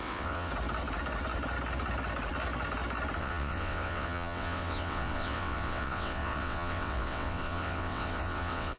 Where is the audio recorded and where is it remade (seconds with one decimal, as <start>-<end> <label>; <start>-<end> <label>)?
0.0-0.5 remade; 0.5-3.2 recorded; 3.2-8.8 remade